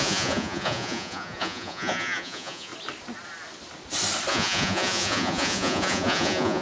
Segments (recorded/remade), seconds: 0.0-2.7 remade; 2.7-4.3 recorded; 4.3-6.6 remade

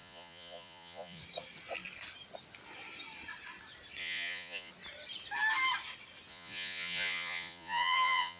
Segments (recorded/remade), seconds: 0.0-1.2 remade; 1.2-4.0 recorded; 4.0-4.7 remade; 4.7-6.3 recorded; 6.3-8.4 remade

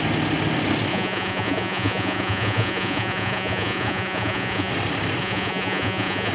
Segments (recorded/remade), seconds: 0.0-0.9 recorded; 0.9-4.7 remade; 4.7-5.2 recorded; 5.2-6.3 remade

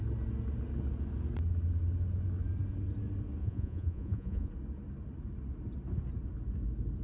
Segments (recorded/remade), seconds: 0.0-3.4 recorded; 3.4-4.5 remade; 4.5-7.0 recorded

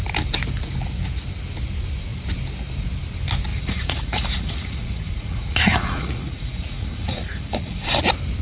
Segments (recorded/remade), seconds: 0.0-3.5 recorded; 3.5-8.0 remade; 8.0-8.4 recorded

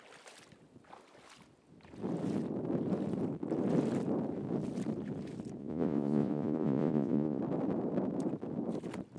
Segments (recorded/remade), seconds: 0.0-5.6 recorded; 5.6-7.4 remade; 7.4-9.2 recorded

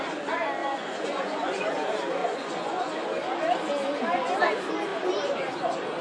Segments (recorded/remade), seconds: 0.0-0.6 recorded; 0.6-1.7 remade; 1.7-2.2 recorded; 2.2-2.9 remade; 2.9-6.0 recorded

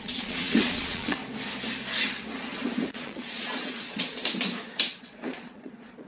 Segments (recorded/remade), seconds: 0.0-1.2 remade; 1.2-2.9 recorded; 2.9-4.2 remade; 4.2-5.0 recorded; 5.0-6.1 remade